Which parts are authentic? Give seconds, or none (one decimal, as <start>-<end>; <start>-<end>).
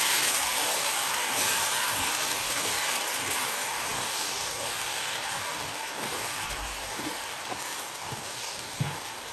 none